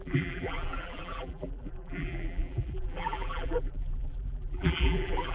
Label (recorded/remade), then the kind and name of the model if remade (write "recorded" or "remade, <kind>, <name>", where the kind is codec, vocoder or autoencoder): remade, vocoder, BigVGAN v2